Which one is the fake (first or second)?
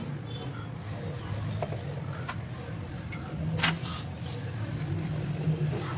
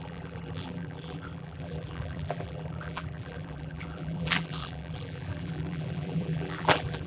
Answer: second